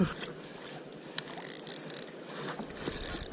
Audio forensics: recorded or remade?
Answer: recorded